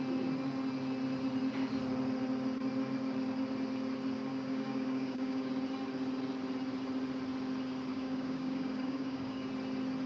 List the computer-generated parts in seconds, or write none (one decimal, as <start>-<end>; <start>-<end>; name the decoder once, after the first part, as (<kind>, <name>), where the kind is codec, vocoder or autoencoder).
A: 4.3-5.5 (codec, DAC); 7.9-9.5